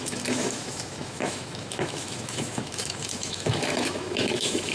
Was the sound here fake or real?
fake